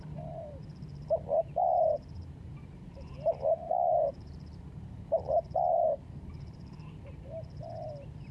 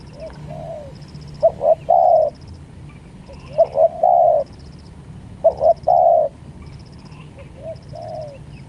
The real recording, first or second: second